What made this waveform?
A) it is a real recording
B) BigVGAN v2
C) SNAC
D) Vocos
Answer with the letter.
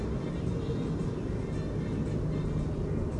A